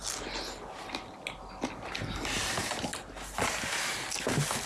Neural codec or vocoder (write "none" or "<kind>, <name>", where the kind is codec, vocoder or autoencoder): none